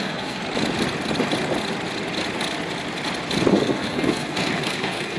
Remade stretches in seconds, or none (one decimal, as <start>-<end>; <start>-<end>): 0.0-0.4; 3.5-5.2